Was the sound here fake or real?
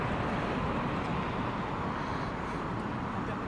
real